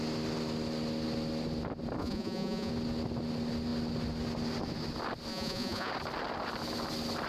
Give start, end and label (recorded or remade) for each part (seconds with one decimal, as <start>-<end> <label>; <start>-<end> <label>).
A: 0.0-2.0 recorded; 2.0-2.7 remade; 2.7-5.3 recorded; 5.3-5.9 remade; 5.9-7.3 recorded